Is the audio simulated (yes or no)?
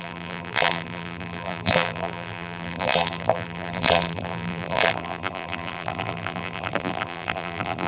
yes